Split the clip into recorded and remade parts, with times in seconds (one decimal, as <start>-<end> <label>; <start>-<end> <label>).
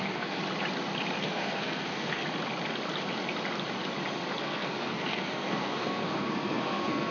0.0-0.4 remade; 0.4-1.2 recorded; 1.2-2.2 remade; 2.2-4.4 recorded; 4.4-7.1 remade